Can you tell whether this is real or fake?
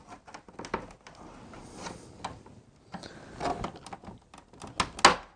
real